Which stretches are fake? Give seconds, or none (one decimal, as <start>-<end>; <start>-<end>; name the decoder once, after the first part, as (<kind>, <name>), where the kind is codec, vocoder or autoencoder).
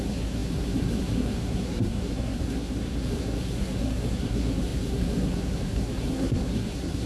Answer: 0.0-7.1 (codec, SNAC)